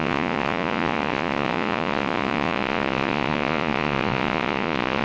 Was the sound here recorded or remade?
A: remade